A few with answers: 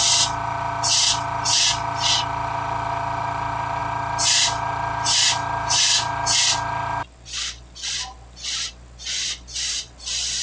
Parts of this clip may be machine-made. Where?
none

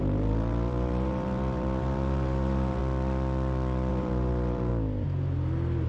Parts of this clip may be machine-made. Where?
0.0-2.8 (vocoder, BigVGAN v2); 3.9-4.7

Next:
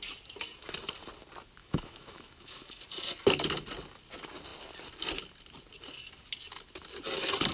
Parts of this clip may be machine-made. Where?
1.6-2.8 (autoencoder, DAC-VAE)

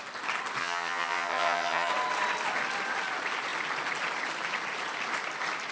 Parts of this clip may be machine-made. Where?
0.6-1.9 (vocoder, HiFi-GAN)

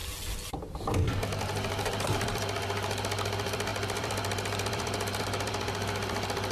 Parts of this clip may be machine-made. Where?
0.5-6.5 (vocoder, BigVGAN v2)

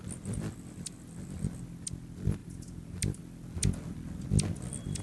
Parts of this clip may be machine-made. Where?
2.4-3.2 (vocoder, BigVGAN v2)